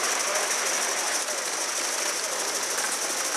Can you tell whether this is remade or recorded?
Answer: recorded